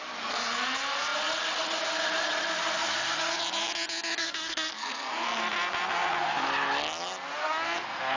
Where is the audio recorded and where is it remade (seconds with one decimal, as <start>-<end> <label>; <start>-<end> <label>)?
0.0-4.2 recorded; 4.2-5.1 remade; 5.1-7.4 recorded; 7.4-8.2 remade